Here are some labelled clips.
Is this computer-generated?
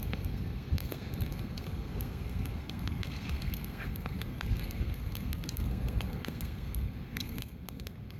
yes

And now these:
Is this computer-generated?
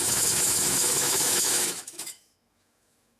yes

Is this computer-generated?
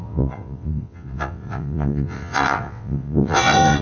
yes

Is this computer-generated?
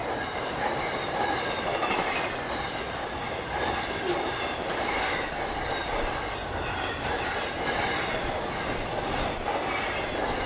no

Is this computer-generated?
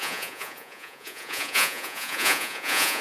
yes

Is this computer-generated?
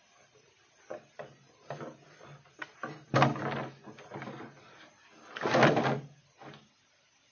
no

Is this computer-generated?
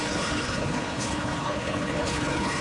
yes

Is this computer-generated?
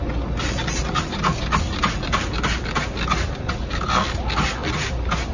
no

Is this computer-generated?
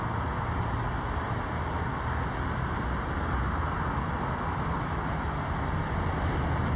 no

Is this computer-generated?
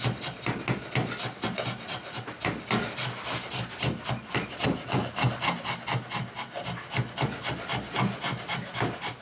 no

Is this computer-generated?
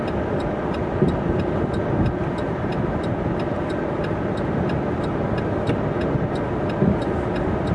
no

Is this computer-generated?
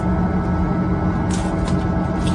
no